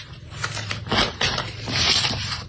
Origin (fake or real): fake